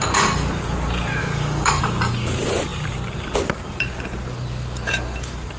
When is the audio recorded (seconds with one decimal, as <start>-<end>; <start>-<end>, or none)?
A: 0.0-1.2; 1.8-5.6